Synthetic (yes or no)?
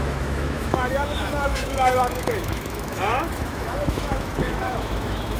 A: yes